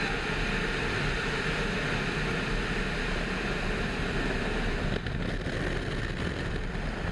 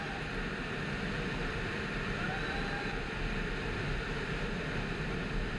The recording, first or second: first